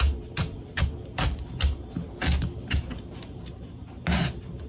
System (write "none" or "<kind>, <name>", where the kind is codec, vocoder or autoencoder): none